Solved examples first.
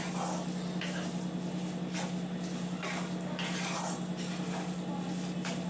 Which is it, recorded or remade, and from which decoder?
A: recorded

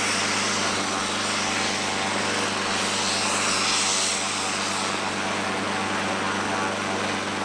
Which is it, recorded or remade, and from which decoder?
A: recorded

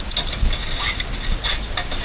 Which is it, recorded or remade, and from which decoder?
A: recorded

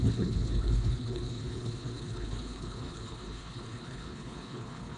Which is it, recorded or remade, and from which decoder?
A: remade, codec, HILCodec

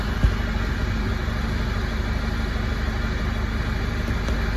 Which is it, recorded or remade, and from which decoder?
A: recorded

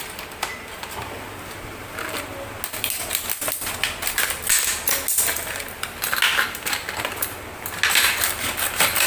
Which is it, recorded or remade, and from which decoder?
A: recorded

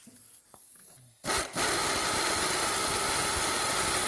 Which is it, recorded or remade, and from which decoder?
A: recorded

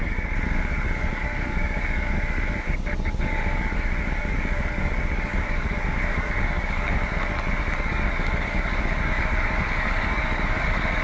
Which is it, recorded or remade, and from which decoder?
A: remade, codec, DAC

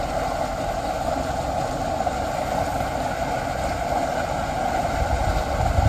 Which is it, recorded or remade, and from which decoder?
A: recorded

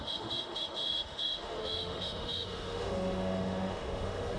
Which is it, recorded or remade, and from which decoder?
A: remade, autoencoder, DAC-VAE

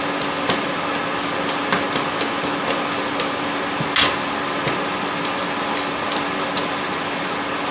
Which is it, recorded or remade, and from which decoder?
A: recorded